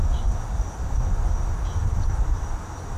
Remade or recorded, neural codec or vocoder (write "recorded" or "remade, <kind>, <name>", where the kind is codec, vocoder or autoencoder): recorded